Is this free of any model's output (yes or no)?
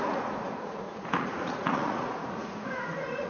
no